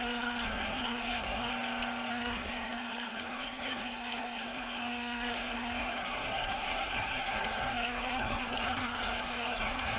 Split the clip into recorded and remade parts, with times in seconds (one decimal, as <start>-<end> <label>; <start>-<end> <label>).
0.0-1.5 remade; 1.5-2.1 recorded; 2.1-10.0 remade